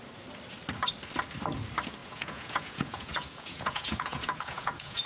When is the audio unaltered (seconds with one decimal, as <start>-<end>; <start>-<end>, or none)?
0.0-2.0